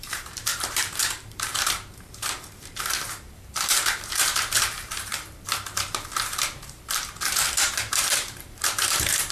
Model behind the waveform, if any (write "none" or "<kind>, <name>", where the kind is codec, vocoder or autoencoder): vocoder, BigVGAN v2